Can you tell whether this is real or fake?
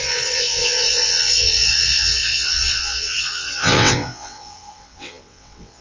fake